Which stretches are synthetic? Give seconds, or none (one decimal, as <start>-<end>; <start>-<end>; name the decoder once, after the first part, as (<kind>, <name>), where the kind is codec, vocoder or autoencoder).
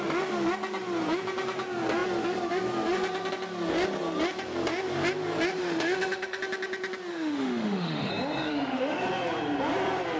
5.6-6.4 (autoencoder, DAC-VAE); 7.1-8.1; 8.5-9.0